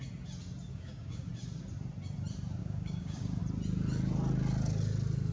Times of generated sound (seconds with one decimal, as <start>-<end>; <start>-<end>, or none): 0.7-1.3; 2.6-3.4